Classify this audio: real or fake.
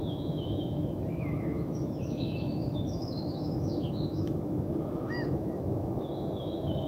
fake